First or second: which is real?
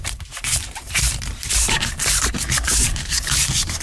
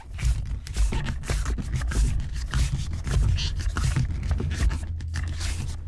second